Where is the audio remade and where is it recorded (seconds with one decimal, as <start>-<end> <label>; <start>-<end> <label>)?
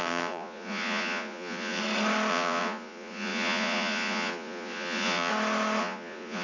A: 0.0-1.8 remade; 1.8-2.3 recorded; 2.3-5.3 remade; 5.3-5.8 recorded; 5.8-6.4 remade